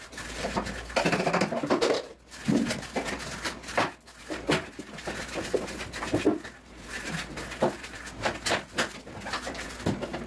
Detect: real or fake real